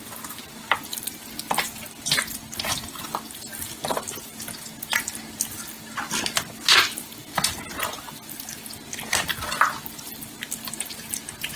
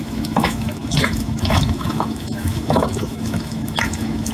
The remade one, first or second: second